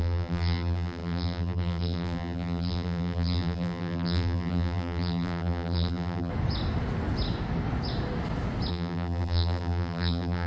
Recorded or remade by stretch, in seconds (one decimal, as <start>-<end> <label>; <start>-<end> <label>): 0.0-6.3 remade; 6.3-8.7 recorded; 8.7-10.5 remade